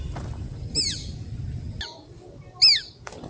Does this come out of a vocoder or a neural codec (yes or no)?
no